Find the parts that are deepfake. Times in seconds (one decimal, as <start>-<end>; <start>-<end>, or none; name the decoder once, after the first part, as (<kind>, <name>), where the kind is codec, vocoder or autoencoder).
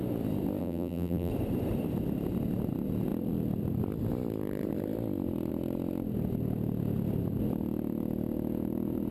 0.6-1.3 (vocoder, BigVGAN v2)